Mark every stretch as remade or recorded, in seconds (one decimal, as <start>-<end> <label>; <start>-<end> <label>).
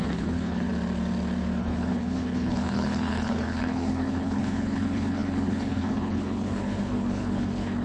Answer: 0.0-0.7 remade; 0.7-1.6 recorded; 1.6-7.8 remade